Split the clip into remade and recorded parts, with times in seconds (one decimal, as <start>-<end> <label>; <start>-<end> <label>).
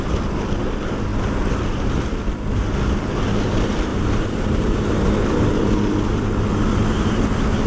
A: 0.0-3.9 recorded; 3.9-5.7 remade; 5.7-7.7 recorded